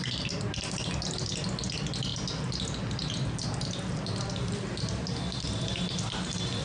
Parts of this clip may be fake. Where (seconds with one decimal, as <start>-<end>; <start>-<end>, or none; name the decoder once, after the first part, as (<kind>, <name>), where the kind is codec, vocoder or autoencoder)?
none